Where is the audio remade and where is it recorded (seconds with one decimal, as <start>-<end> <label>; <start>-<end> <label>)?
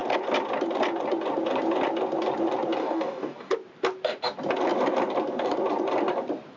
0.0-2.8 recorded; 2.8-3.5 remade; 3.5-6.6 recorded